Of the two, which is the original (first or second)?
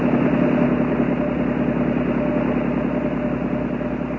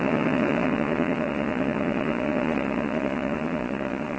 first